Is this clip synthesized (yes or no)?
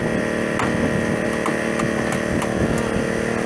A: no